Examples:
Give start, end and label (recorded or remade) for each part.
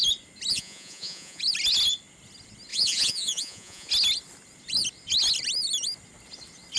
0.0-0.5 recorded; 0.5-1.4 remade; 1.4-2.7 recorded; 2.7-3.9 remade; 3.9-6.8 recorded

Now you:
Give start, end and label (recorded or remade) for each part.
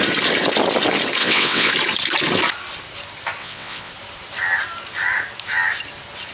0.0-1.2 recorded; 1.2-1.7 remade; 1.7-3.4 recorded; 3.4-3.9 remade; 3.9-6.3 recorded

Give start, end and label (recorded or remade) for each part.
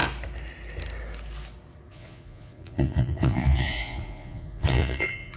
0.0-1.9 recorded; 1.9-5.4 remade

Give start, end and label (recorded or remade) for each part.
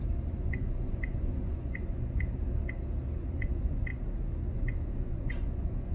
0.0-2.3 remade; 2.3-3.2 recorded; 3.2-3.9 remade; 3.9-4.5 recorded; 4.5-5.9 remade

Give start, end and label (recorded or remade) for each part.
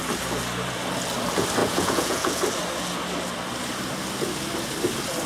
0.0-1.6 recorded; 1.6-2.4 remade; 2.4-5.3 recorded